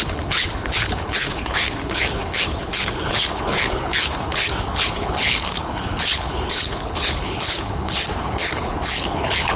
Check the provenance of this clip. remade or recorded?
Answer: remade